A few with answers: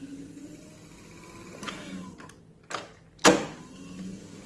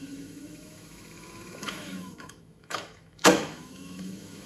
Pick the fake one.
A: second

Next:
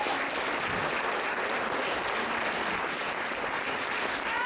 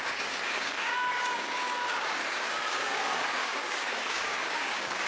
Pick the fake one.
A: second